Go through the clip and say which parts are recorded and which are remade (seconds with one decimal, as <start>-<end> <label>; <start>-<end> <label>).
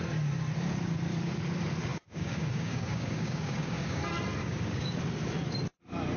0.0-1.9 recorded; 1.9-4.0 remade; 4.0-4.4 recorded; 4.4-5.0 remade; 5.0-6.2 recorded